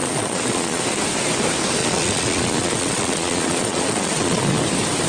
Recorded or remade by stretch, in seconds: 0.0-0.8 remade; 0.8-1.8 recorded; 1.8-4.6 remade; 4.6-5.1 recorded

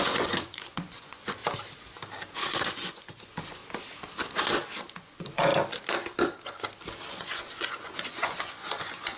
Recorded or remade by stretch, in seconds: 0.0-1.4 remade; 1.4-2.3 recorded; 2.3-3.6 remade; 3.6-4.8 recorded; 4.8-5.5 remade; 5.5-7.1 recorded; 7.1-9.2 remade